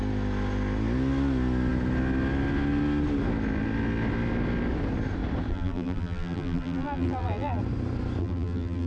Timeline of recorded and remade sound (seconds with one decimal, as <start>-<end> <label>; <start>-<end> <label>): 0.0-5.5 recorded; 5.5-7.6 remade; 7.6-8.2 recorded; 8.2-8.9 remade